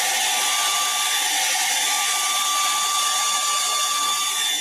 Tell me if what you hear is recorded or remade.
recorded